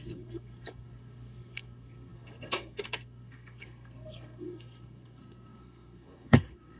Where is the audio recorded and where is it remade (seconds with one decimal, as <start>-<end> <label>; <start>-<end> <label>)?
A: 0.0-6.8 remade